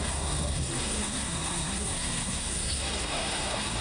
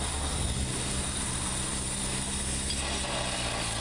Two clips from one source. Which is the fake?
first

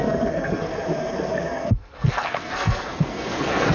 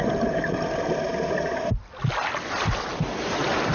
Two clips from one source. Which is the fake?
first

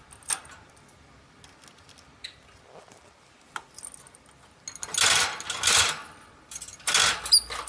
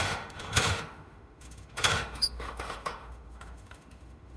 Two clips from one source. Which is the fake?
second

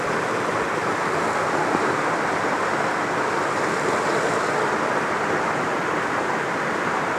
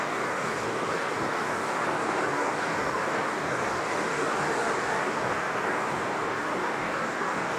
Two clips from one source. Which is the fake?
second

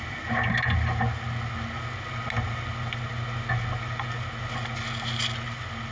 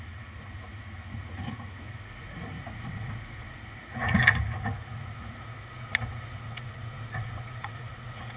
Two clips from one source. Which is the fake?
second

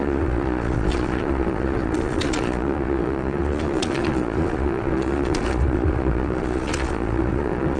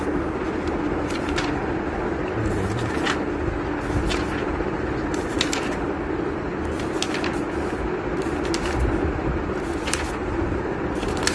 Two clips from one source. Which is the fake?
first